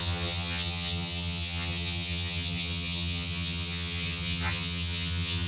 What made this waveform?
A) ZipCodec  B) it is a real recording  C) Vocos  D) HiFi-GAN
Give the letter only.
D